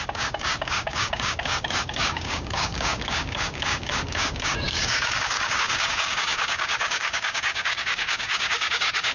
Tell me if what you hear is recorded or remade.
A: remade